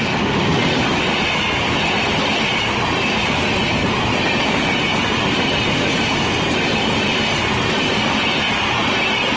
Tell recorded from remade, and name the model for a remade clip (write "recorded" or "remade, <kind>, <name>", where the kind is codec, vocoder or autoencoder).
recorded